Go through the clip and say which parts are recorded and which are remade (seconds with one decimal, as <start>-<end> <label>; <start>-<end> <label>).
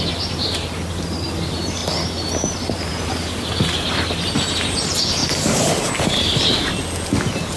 0.0-5.2 recorded; 5.2-6.6 remade; 6.6-7.6 recorded